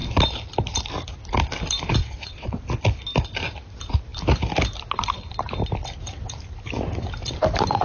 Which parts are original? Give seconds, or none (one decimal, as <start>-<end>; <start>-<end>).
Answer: 0.0-2.0; 2.6-7.8